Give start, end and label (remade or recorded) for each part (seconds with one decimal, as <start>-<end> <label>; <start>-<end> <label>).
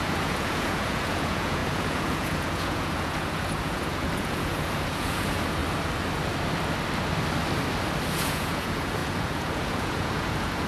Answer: 0.0-5.6 remade; 5.6-8.1 recorded; 8.1-10.7 remade